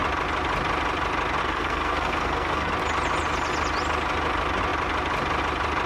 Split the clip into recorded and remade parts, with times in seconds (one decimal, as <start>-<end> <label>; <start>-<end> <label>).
0.0-1.4 recorded; 1.4-2.7 remade; 2.7-5.9 recorded